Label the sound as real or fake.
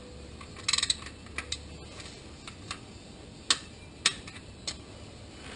real